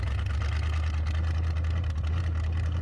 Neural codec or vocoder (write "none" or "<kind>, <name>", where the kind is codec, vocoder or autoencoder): none